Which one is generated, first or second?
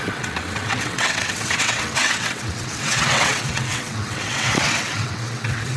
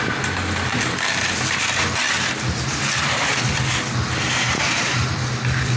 first